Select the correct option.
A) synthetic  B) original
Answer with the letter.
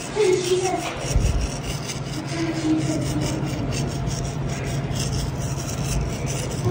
B